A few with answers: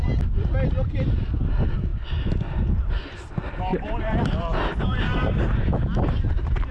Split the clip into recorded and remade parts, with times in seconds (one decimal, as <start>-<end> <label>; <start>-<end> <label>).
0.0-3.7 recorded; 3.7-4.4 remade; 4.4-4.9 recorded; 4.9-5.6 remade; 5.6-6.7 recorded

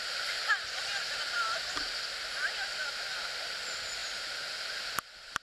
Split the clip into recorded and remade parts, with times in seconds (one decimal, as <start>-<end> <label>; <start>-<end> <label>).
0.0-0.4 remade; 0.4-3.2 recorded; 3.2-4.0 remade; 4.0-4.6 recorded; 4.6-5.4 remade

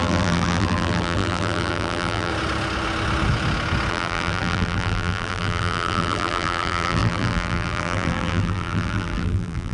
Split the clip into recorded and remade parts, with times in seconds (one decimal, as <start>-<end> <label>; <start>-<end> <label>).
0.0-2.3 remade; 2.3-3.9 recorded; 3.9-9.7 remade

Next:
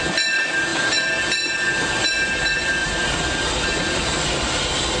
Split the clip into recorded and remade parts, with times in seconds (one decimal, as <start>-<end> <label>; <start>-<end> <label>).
0.0-2.8 recorded; 2.8-4.6 remade; 4.6-5.0 recorded